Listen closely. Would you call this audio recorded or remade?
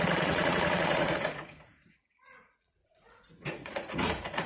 remade